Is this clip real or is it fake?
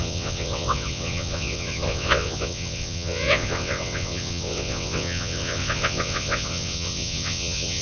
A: fake